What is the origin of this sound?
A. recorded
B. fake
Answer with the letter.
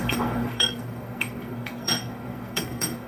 B